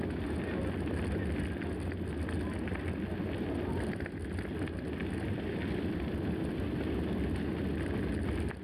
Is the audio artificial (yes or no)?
no